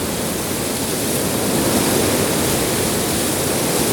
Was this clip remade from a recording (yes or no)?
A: no